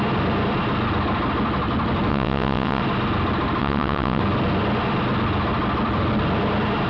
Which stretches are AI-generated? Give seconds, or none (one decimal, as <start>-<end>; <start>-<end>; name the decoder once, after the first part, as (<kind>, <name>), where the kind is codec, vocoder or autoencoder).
2.1-2.8 (vocoder, WaveNeXt); 3.6-4.2